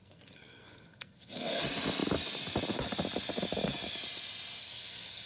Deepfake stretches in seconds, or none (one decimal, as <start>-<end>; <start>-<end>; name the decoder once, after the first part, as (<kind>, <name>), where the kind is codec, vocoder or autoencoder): 0.0-1.6 (codec, SNAC); 4.6-5.3